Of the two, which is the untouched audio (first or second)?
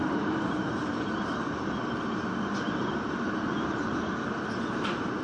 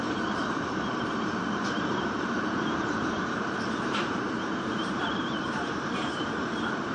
first